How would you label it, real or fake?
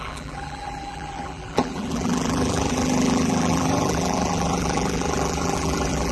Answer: fake